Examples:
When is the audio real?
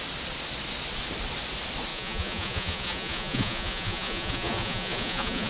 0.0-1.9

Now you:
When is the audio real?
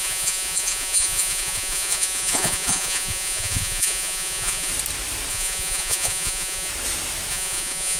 4.7-5.3; 6.7-7.3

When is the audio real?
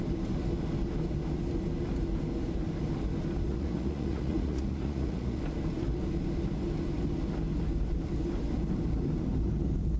0.0-3.5; 5.4-10.0